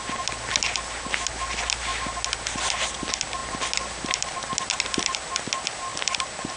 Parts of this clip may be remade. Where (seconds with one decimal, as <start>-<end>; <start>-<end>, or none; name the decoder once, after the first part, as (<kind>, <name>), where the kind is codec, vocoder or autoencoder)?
none